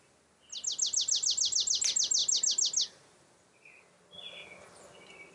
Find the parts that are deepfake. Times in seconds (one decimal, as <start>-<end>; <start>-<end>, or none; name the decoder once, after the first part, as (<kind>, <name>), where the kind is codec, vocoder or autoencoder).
none